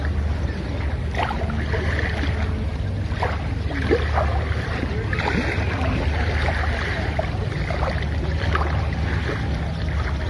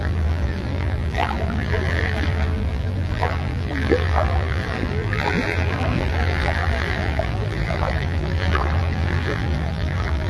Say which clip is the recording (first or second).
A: first